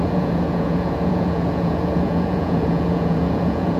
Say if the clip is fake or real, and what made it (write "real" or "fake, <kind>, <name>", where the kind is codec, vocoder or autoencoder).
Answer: fake, vocoder, Vocos